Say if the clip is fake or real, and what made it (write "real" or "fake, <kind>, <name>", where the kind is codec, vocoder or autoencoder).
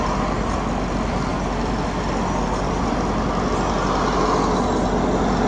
real